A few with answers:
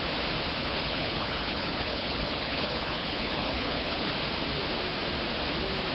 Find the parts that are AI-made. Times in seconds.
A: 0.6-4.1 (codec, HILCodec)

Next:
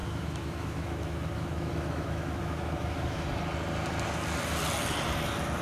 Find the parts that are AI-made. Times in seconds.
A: 0.0-3.4 (autoencoder, DAC-VAE)

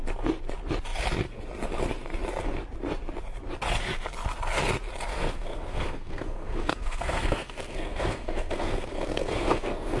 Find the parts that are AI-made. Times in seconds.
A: 5.1-10.0 (codec, SNAC)

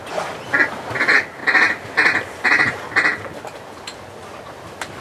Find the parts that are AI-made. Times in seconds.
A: none